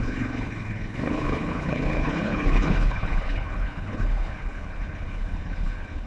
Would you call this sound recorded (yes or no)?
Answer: no